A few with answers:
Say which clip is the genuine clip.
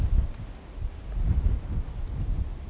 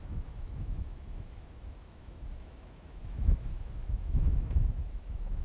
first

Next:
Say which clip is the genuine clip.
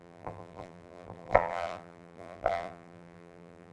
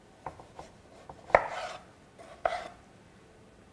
second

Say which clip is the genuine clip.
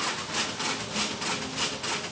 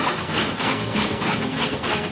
first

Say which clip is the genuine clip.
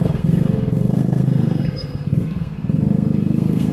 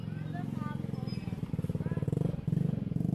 second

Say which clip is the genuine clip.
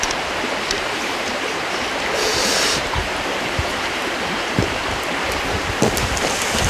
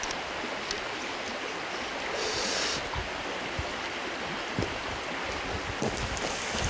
second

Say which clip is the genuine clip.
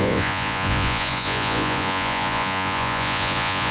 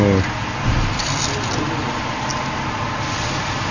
second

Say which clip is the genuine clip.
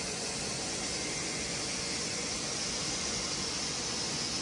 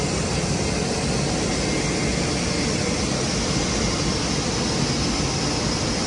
second